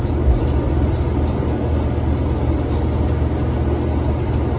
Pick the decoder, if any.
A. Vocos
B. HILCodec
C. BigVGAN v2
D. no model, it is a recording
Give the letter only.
D